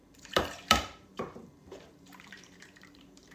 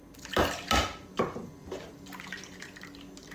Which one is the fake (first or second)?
first